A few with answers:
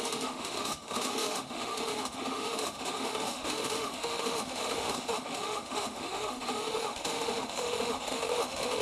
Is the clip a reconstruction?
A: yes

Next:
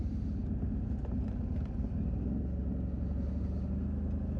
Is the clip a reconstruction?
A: no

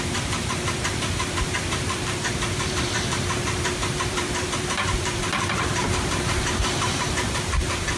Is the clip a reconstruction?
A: yes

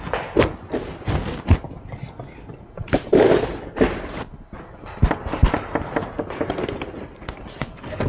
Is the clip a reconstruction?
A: no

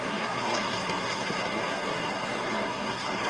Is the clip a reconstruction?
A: yes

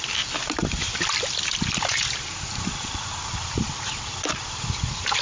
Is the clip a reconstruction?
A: yes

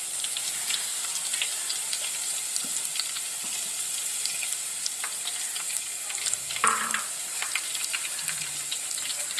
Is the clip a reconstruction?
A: no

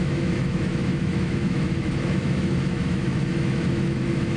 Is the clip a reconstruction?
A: yes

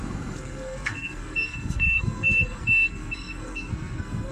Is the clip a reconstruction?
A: yes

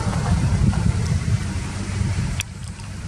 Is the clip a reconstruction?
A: yes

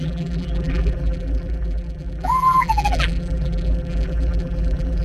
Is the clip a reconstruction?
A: yes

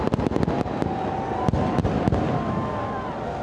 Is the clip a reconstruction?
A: no